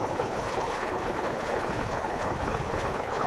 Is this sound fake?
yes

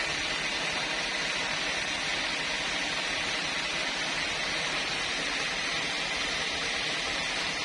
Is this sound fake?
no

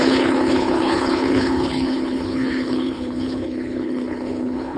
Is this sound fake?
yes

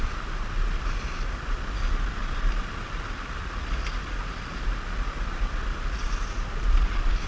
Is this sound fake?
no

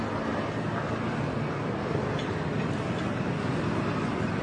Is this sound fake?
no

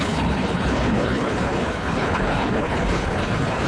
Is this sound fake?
yes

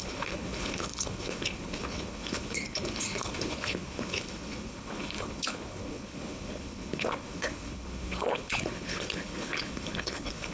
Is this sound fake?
yes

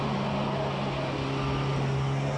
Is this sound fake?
no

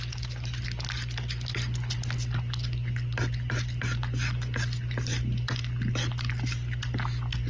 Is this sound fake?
no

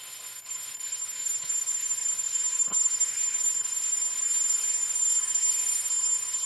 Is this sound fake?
yes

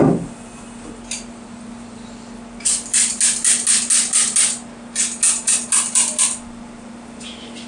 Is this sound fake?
no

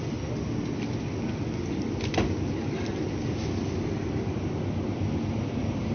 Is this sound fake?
no